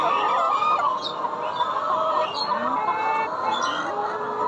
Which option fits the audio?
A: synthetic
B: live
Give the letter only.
A